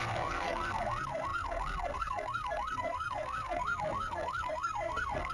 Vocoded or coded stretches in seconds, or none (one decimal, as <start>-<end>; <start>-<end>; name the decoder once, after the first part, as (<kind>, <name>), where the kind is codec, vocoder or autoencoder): 0.0-5.3 (codec, SNAC)